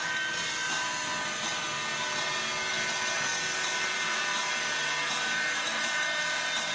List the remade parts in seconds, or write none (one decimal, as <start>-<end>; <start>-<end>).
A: none